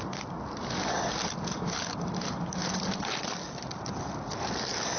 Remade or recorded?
recorded